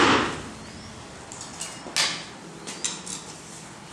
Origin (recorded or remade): recorded